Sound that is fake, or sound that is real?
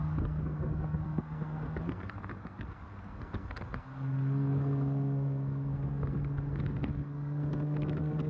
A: fake